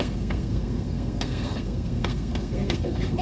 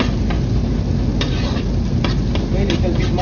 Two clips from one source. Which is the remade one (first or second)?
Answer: first